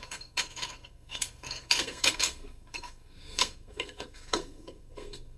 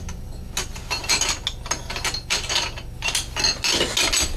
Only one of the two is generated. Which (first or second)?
first